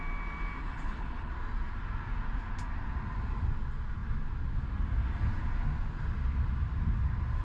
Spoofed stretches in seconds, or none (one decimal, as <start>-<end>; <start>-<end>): 0.6-1.3